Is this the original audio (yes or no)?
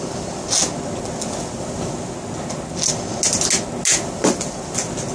yes